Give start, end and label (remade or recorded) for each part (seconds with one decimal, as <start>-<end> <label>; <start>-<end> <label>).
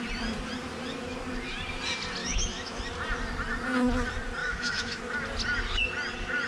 0.0-2.2 recorded; 2.2-2.8 remade; 2.8-4.4 recorded; 4.4-5.0 remade; 5.0-6.5 recorded